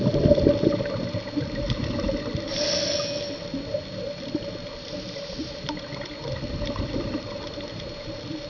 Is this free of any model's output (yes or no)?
yes